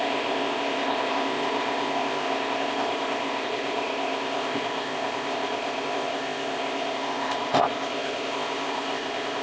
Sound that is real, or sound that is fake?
fake